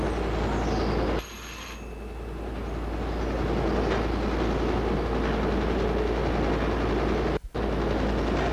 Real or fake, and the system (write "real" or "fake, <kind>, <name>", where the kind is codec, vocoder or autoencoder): real